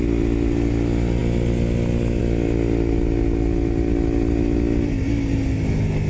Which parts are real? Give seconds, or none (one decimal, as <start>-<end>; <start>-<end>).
0.0-6.1